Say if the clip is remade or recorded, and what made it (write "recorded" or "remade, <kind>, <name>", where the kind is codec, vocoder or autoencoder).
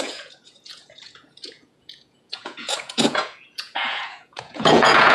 remade, vocoder, Vocos